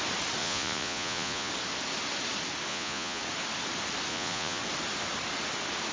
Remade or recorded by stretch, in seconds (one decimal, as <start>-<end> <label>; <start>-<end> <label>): 0.0-0.4 recorded; 0.4-1.5 remade; 1.5-2.7 recorded; 2.7-3.2 remade; 3.2-4.1 recorded; 4.1-4.6 remade; 4.6-5.9 recorded